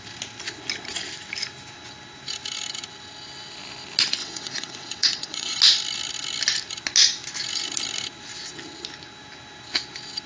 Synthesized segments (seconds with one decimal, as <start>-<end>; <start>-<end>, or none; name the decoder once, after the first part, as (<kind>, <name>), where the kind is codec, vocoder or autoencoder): 4.2-5.6 (vocoder, WaveNeXt)